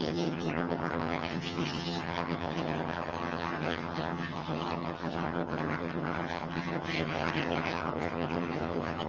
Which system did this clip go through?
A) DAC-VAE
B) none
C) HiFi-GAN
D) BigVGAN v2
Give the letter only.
C